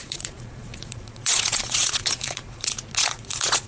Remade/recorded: remade